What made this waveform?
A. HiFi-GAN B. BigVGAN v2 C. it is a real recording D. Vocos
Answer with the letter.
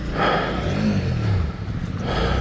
C